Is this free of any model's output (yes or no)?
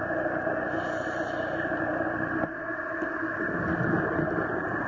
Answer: yes